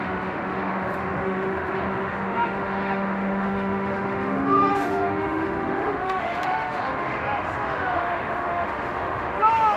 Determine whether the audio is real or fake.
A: fake